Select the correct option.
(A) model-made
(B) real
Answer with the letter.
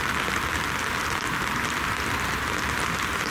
A